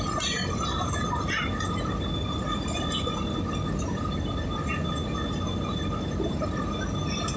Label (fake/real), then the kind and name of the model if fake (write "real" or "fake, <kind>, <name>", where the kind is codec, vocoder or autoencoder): real